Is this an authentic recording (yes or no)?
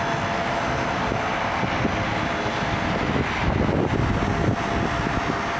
yes